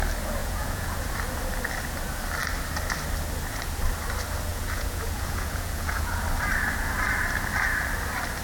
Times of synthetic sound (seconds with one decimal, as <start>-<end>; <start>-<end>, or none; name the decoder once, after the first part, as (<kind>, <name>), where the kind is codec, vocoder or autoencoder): 0.4-1.1 (vocoder, Vocos); 4.5-6.2